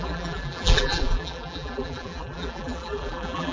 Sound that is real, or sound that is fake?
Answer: fake